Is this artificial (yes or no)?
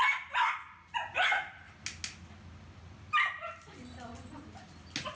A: no